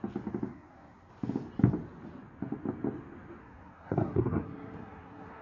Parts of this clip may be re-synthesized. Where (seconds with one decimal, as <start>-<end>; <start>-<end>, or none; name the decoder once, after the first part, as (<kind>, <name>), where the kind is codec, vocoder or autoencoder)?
0.5-1.1 (codec, SNAC); 3.4-5.4